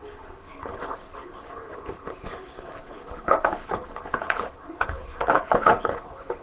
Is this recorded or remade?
remade